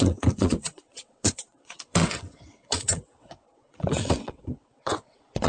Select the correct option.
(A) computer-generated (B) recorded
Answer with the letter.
A